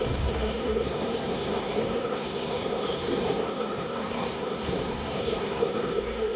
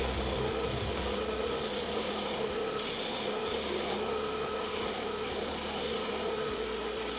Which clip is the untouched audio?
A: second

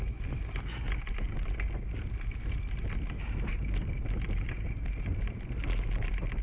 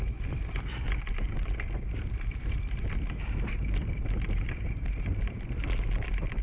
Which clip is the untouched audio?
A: first